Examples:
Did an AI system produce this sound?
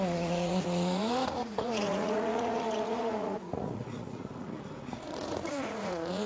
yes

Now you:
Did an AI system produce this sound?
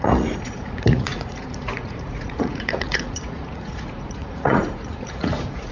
yes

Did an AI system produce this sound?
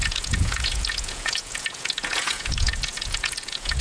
yes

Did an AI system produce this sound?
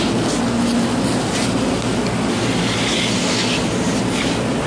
no